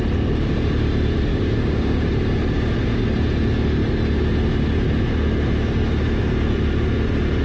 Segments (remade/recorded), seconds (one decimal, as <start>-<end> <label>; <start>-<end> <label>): 0.0-1.3 recorded; 1.3-2.1 remade; 2.1-7.4 recorded